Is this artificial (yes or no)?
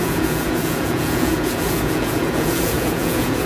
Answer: yes